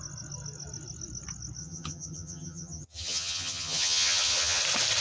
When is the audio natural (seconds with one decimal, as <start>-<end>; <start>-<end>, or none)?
0.0-1.6; 4.6-5.0